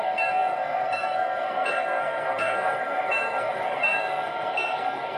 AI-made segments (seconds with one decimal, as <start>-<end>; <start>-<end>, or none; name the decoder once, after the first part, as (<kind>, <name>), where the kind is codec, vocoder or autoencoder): 0.0-5.2 (codec, SNAC)